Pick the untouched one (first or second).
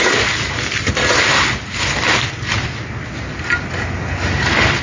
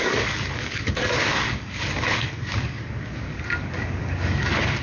first